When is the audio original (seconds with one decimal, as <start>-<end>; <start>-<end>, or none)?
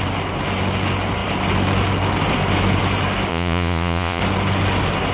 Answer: 0.0-3.3; 4.2-5.1